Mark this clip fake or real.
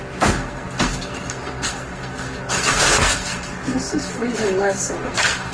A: fake